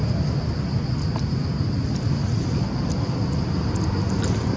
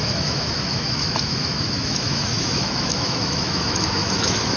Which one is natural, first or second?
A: first